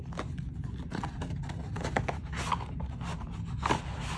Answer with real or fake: real